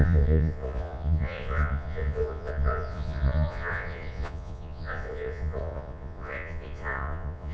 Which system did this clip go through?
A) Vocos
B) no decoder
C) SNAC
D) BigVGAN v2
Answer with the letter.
A